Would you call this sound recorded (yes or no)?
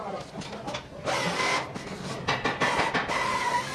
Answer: yes